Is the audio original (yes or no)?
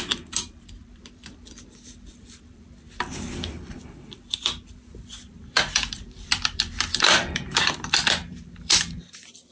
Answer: no